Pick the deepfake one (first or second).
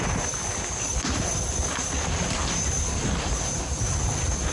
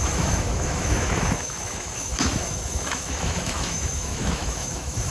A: second